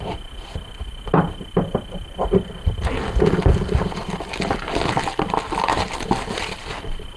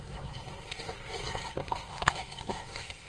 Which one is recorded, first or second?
first